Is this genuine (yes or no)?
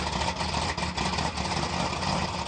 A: yes